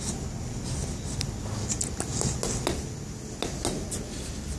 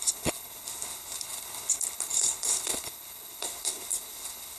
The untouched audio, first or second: first